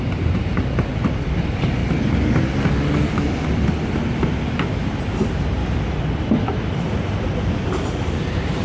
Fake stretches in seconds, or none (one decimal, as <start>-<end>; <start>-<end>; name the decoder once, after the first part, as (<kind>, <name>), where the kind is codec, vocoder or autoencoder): 0.0-1.8 (vocoder, BigVGAN v2); 5.0-5.6; 6.4-8.6

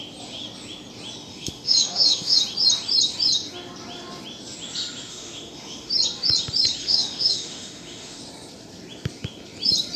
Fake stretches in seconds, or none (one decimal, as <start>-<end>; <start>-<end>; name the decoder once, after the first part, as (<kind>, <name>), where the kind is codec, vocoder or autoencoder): 1.2-2.4 (autoencoder, DAC-VAE); 5.1-5.9; 6.8-8.2

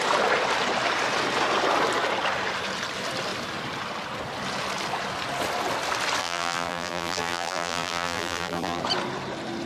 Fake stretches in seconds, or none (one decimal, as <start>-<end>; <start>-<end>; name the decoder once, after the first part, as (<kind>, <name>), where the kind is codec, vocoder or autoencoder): 6.2-8.8 (vocoder, BigVGAN v2)

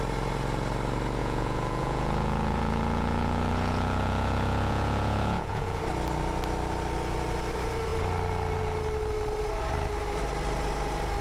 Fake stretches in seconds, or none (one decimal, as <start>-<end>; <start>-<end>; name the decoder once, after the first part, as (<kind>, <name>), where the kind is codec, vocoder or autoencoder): 1.2-5.8 (vocoder, Vocos)